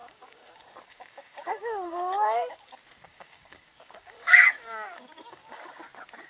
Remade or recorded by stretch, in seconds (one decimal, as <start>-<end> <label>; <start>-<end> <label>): 0.0-2.7 remade; 2.7-3.1 recorded; 3.1-5.8 remade; 5.8-6.3 recorded